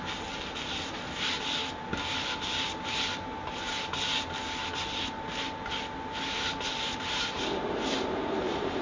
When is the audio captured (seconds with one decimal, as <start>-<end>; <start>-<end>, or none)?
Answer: 0.0-6.7